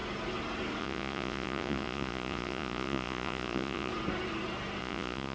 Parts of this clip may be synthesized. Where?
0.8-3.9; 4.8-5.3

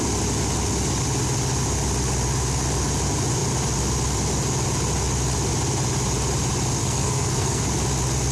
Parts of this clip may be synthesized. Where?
6.8-7.6

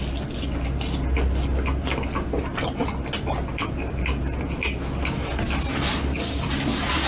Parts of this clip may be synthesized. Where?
none

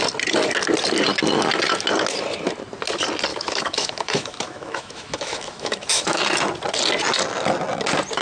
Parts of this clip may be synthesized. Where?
3.3-6.2

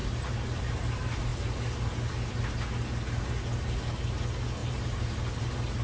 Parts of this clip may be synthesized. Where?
0.0-0.6; 4.6-5.8